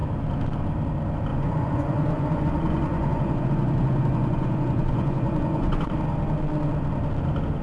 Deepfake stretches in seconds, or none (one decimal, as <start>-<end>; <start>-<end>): 1.3-5.9